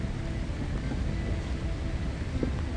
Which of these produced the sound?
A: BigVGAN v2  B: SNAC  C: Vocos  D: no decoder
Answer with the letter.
D